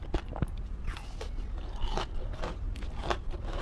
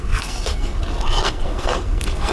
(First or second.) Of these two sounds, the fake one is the second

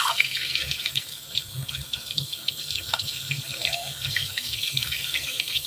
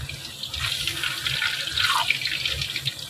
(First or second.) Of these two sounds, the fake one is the first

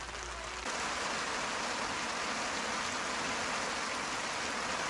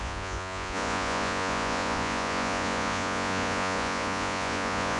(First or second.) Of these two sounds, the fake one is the second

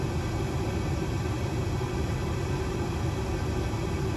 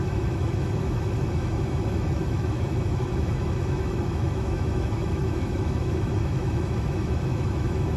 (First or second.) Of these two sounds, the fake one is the second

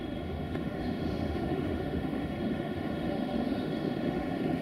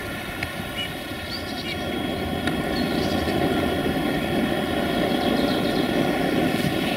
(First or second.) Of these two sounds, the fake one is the first